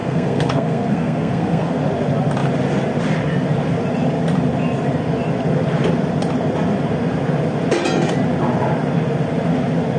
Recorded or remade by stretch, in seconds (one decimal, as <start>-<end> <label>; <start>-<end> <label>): 0.0-1.8 remade; 1.8-10.0 recorded